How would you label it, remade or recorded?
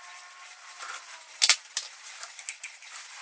recorded